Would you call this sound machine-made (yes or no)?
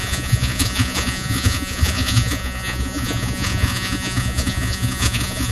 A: yes